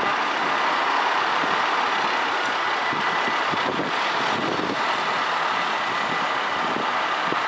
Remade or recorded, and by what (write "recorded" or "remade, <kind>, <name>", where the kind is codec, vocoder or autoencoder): recorded